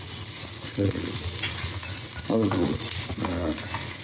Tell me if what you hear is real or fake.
fake